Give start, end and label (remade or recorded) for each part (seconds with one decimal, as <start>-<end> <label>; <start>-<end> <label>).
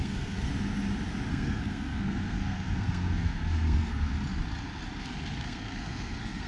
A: 0.0-0.5 remade; 0.5-1.3 recorded; 1.3-4.1 remade; 4.1-5.0 recorded; 5.0-6.5 remade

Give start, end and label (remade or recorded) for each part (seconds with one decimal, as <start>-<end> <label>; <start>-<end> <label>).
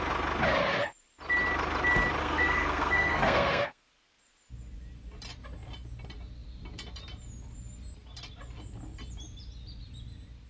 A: 0.0-2.2 recorded; 2.2-3.9 remade; 3.9-10.5 recorded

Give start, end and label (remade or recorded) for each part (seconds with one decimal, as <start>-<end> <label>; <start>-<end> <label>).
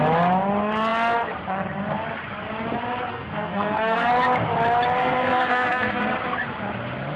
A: 0.0-3.1 recorded; 3.1-4.1 remade; 4.1-5.0 recorded; 5.0-6.0 remade; 6.0-7.2 recorded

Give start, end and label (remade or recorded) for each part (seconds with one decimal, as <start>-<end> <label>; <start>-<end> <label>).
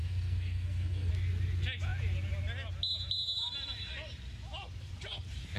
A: 0.0-1.1 remade; 1.1-5.6 recorded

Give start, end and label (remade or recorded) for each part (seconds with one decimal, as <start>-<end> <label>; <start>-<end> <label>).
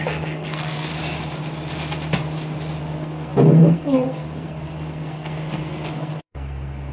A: 0.0-0.9 remade; 0.9-2.8 recorded; 2.8-6.9 remade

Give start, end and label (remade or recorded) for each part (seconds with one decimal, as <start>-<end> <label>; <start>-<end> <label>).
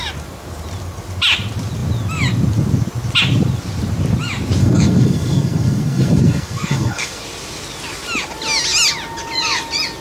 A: 0.0-4.6 recorded; 4.6-7.2 remade; 7.2-10.0 recorded